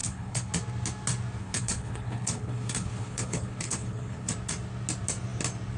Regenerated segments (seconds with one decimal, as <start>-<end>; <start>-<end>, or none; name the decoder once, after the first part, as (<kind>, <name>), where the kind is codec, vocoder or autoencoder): 0.0-0.5 (codec, HILCodec); 1.4-4.3